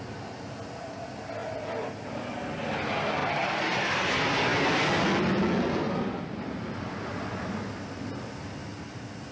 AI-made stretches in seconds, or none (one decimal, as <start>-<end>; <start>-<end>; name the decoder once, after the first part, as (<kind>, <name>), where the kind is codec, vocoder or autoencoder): none